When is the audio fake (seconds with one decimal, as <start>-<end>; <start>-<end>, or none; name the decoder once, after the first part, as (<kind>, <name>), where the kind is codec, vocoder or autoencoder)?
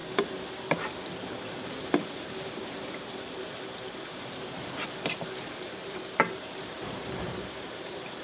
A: 1.5-2.6 (vocoder, BigVGAN v2); 4.1-8.2